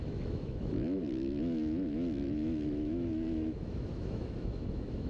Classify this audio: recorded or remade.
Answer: remade